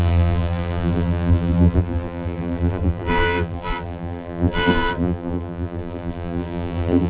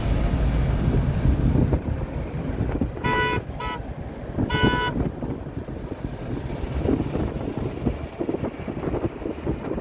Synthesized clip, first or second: first